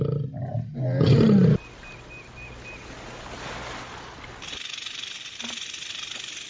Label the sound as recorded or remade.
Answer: recorded